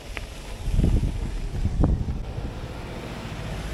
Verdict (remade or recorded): recorded